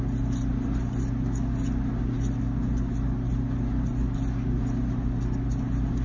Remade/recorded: recorded